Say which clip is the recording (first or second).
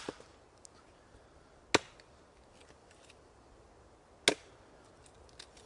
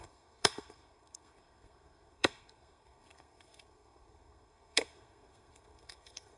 first